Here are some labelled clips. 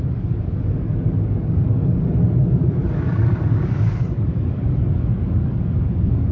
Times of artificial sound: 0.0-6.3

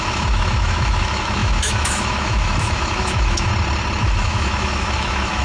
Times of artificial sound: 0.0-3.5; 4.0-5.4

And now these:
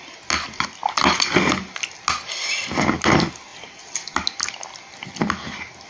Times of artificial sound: none